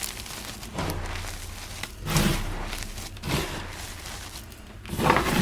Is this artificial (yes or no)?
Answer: no